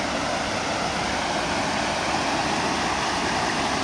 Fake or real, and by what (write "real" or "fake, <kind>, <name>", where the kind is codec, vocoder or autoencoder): real